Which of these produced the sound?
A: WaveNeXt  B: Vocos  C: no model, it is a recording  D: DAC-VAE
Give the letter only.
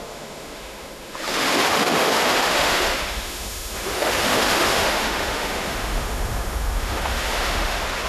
D